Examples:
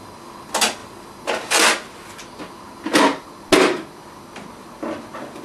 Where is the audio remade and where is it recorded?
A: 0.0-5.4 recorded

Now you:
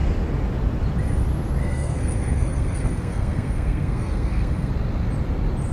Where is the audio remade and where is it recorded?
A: 0.0-1.6 recorded; 1.6-4.7 remade; 4.7-5.7 recorded

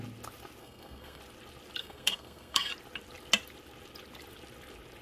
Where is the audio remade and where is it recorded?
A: 0.0-0.6 recorded; 0.6-1.2 remade; 1.2-1.8 recorded; 1.8-2.7 remade; 2.7-5.0 recorded

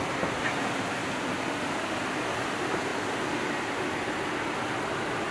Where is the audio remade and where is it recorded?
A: 0.0-5.3 recorded

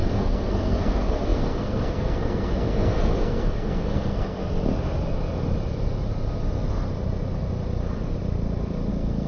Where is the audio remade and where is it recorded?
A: 0.0-4.4 remade; 4.4-8.9 recorded; 8.9-9.3 remade

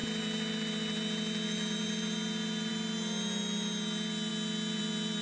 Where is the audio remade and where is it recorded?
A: 0.0-5.2 recorded

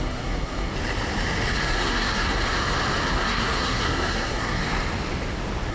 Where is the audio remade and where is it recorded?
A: 0.0-0.7 remade; 0.7-1.6 recorded; 1.6-2.4 remade; 2.4-3.1 recorded; 3.1-4.6 remade; 4.6-5.7 recorded

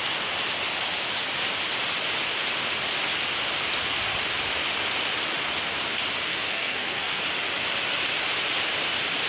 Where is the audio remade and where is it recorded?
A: 0.0-6.3 recorded; 6.3-7.2 remade; 7.2-9.3 recorded